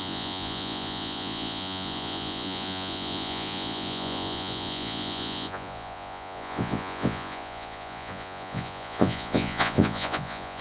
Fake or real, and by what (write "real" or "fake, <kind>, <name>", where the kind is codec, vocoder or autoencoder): fake, vocoder, Vocos